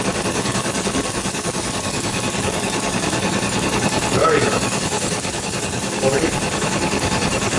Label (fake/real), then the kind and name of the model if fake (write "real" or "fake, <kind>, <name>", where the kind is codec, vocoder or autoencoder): fake, codec, DAC